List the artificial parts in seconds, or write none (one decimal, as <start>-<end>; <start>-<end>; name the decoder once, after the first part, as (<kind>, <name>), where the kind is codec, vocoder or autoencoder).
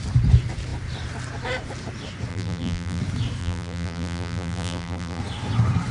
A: 2.3-3.0 (vocoder, BigVGAN v2); 3.4-5.2